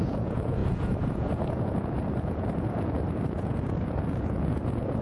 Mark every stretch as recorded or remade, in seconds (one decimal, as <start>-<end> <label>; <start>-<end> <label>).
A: 0.0-5.0 remade